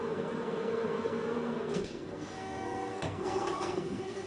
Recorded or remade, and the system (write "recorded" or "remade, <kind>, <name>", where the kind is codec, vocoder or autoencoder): remade, codec, SNAC